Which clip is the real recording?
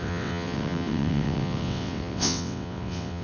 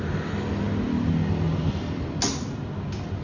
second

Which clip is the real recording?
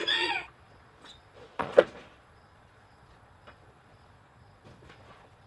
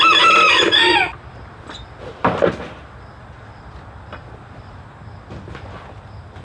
second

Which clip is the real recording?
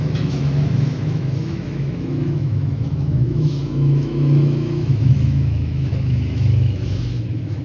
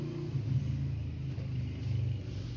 second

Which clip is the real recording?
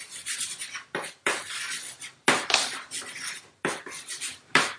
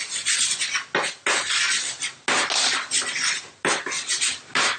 second